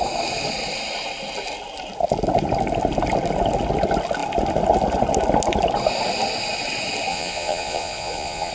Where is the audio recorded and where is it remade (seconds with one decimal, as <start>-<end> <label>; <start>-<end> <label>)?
0.0-7.1 recorded; 7.1-8.5 remade